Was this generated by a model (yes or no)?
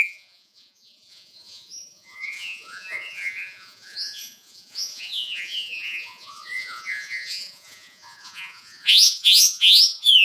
yes